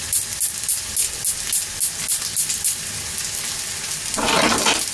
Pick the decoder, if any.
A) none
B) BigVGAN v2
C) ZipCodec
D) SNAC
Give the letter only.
A